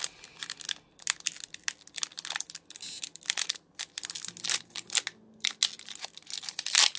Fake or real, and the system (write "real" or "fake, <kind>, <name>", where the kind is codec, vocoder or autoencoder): real